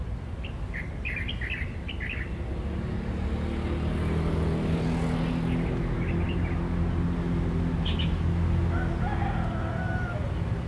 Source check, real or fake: real